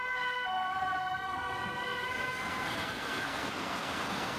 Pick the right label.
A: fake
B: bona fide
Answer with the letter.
A